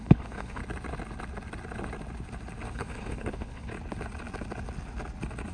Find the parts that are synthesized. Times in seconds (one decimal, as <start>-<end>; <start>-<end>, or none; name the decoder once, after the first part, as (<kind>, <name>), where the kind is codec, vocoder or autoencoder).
0.0-0.6 (codec, HILCodec); 2.7-3.7